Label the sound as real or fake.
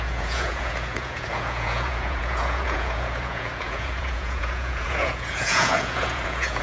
fake